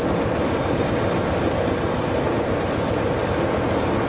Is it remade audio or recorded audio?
recorded